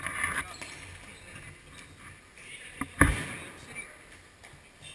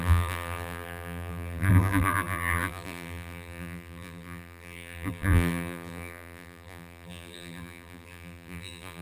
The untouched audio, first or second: first